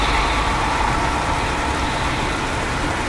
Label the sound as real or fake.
real